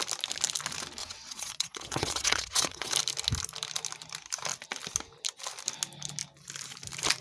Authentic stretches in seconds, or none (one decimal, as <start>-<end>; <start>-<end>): 0.0-1.0; 2.9-7.2